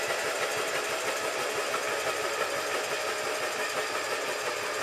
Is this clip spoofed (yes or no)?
no